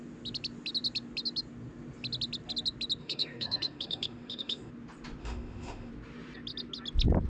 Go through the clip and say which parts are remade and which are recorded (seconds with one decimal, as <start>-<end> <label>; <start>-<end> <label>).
0.0-3.0 recorded; 3.0-4.7 remade; 4.7-5.2 recorded; 5.2-5.9 remade; 5.9-7.3 recorded